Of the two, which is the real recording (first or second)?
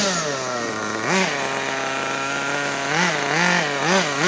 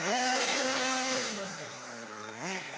first